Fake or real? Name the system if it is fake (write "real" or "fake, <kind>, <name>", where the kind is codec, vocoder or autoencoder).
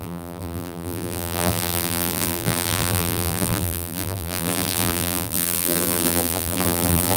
fake, vocoder, BigVGAN v2